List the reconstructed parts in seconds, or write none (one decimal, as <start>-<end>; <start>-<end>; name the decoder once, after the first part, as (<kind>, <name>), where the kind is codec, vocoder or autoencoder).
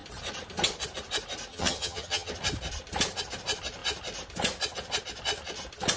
1.5-2.3 (vocoder, HiFi-GAN)